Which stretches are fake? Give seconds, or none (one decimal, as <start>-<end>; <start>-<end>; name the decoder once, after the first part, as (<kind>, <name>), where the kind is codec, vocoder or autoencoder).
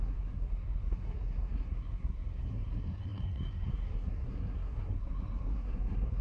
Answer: 0.0-6.2 (codec, SNAC)